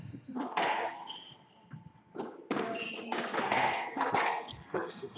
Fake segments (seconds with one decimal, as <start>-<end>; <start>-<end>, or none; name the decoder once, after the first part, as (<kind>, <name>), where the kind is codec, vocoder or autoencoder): 0.0-1.0 (codec, SNAC); 3.0-5.2